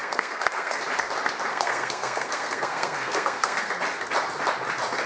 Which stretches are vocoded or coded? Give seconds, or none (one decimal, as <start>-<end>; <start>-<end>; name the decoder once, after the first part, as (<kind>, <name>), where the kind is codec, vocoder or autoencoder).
0.0-0.8 (codec, SNAC); 1.5-3.7